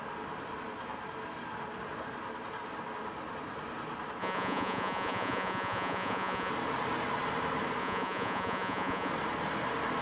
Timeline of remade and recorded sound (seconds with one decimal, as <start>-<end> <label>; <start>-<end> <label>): 0.0-4.2 recorded; 4.2-6.5 remade; 6.5-7.8 recorded; 7.8-9.1 remade; 9.1-10.0 recorded